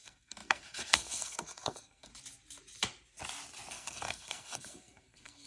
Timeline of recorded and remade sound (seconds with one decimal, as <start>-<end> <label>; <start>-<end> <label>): 0.0-2.1 remade; 2.1-3.7 recorded; 3.7-5.5 remade

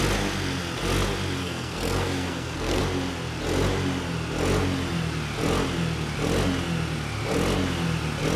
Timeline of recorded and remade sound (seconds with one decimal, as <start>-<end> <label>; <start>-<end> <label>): 0.0-1.4 recorded; 1.4-2.8 remade; 2.8-8.4 recorded

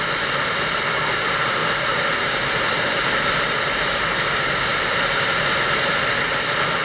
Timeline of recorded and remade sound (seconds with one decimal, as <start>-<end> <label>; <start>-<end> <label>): 0.0-6.8 recorded

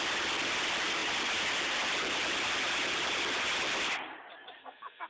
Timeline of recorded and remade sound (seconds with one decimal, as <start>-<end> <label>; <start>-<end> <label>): 0.0-4.6 recorded; 4.6-5.1 remade